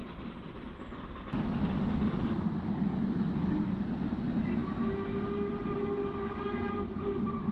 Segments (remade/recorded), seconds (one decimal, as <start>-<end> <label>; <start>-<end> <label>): 0.0-7.5 recorded